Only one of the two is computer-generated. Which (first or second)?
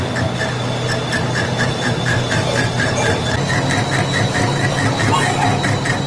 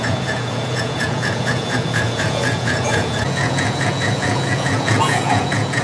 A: second